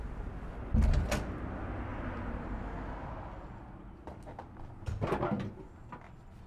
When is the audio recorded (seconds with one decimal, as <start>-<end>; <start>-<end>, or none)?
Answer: 0.0-1.9; 2.6-6.5